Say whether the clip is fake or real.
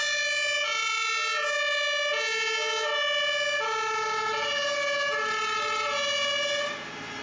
real